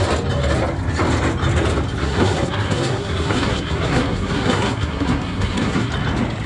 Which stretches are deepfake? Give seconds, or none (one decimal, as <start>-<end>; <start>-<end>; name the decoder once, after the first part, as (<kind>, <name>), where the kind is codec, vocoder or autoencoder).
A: 2.0-5.9 (codec, SNAC)